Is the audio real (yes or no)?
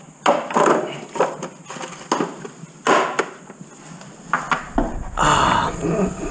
yes